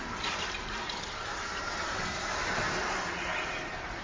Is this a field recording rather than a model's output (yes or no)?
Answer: no